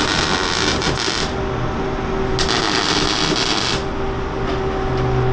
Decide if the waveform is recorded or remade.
recorded